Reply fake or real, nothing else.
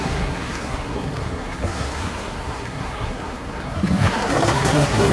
fake